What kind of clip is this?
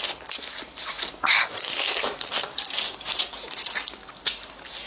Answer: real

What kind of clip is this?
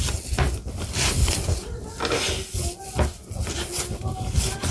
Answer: real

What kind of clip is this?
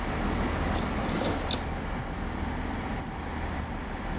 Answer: real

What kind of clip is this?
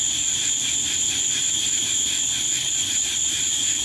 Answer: real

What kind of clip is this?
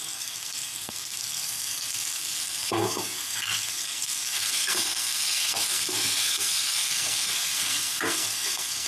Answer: fake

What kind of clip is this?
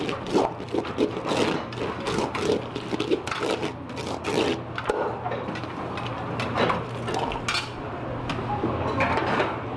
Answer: real